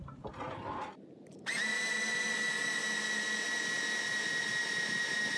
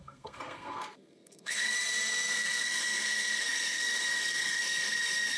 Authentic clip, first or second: first